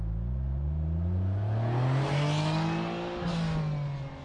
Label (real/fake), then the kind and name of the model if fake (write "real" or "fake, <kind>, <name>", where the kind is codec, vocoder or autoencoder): real